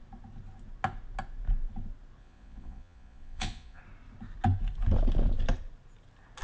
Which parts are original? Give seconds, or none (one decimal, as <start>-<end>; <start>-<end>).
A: 0.0-2.2; 3.8-6.4